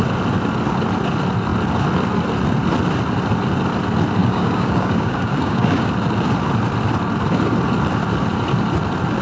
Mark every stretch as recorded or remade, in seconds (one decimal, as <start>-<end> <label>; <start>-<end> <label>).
0.0-4.2 recorded; 4.2-5.9 remade; 5.9-9.2 recorded